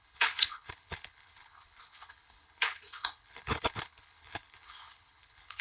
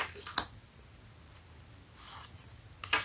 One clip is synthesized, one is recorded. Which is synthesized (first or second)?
first